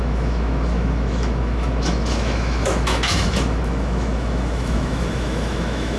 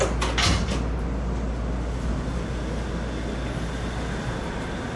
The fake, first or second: first